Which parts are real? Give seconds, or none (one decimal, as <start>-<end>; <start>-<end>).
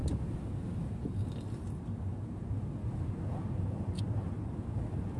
0.0-5.2